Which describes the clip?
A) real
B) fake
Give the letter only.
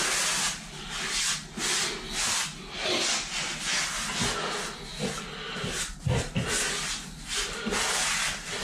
A